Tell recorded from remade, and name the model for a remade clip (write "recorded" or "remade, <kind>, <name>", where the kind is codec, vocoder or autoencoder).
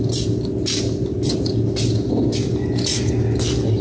recorded